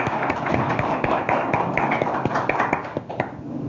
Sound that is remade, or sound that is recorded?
remade